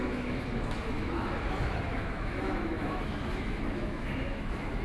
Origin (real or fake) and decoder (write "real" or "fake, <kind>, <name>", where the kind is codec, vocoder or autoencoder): fake, autoencoder, DAC-VAE